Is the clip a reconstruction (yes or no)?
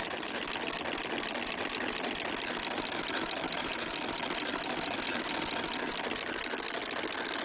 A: yes